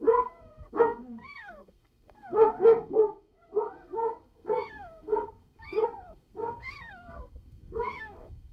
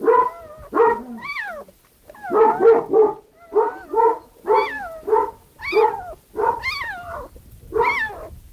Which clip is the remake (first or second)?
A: first